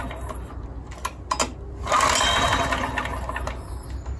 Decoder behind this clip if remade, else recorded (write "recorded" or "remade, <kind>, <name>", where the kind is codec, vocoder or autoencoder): recorded